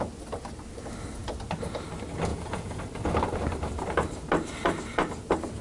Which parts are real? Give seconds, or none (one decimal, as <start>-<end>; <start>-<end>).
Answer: 0.0-2.3; 2.8-5.6